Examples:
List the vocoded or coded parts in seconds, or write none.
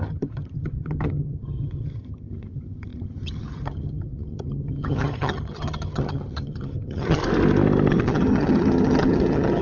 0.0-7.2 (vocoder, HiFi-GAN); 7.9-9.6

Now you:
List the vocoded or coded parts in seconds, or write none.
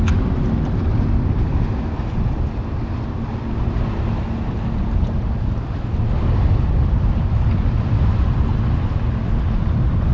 none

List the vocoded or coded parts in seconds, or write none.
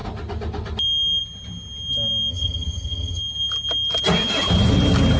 2.3-3.2 (vocoder, HiFi-GAN)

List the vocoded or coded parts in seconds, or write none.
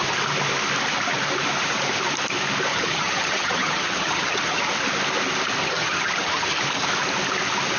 2.7-4.6 (vocoder, HiFi-GAN); 5.6-6.6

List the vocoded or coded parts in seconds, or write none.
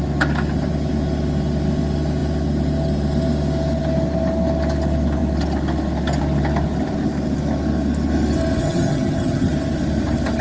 8.6-9.5 (vocoder, HiFi-GAN)